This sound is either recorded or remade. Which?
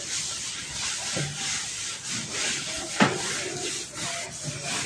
remade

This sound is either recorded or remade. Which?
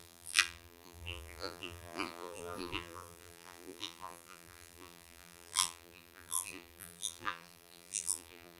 remade